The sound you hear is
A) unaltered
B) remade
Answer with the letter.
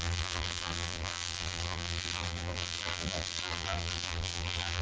B